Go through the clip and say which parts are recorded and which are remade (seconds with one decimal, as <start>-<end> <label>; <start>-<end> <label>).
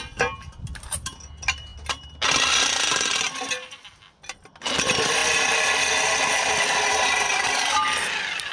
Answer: 0.0-8.5 recorded